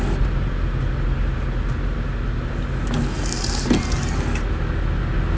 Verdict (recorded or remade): recorded